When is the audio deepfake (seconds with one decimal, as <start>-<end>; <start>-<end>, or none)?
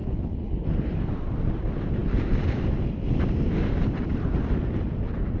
0.0-1.1